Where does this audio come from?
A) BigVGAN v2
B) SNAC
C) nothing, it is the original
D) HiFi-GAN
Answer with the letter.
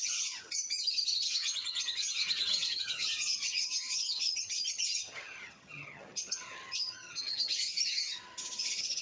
D